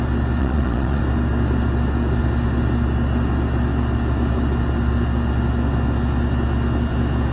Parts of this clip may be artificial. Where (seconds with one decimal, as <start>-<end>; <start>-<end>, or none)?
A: 0.4-1.0